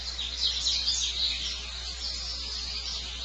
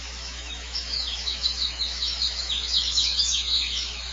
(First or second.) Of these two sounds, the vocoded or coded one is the second